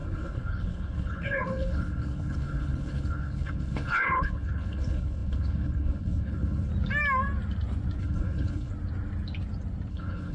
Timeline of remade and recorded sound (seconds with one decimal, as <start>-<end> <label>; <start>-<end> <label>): 0.0-6.7 remade; 6.7-8.0 recorded; 8.0-8.7 remade; 8.7-9.9 recorded; 9.9-10.3 remade

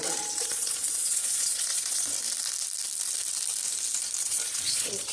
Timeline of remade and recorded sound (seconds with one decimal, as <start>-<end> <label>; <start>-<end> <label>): 0.0-2.1 remade; 2.1-4.2 recorded; 4.2-5.1 remade

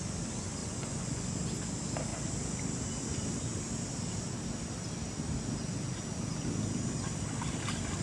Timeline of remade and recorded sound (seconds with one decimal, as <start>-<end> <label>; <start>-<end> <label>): 0.0-0.6 recorded; 0.6-1.3 remade; 1.3-8.0 recorded

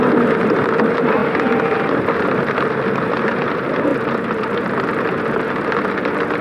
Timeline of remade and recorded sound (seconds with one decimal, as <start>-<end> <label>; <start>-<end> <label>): 0.0-3.9 recorded; 3.9-4.6 remade; 4.6-6.4 recorded